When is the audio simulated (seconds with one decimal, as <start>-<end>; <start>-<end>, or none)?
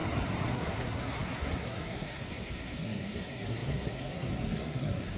0.5-5.2